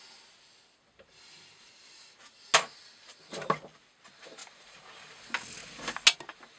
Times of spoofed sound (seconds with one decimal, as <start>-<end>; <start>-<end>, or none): 4.4-5.2

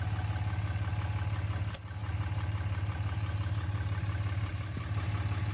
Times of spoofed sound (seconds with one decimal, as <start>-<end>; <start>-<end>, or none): 2.0-5.5